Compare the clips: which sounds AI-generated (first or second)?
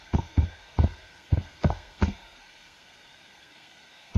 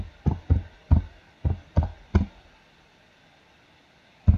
first